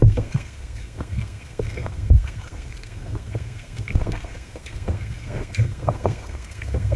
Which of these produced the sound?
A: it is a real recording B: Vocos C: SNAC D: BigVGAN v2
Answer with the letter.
C